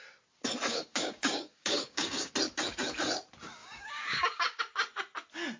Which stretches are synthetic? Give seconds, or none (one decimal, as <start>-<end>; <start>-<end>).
0.7-2.3; 3.6-4.6